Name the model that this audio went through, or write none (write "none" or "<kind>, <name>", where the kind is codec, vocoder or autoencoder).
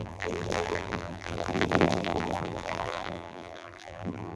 vocoder, BigVGAN v2